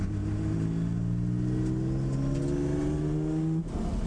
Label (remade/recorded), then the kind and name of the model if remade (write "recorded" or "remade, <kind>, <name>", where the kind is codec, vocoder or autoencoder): recorded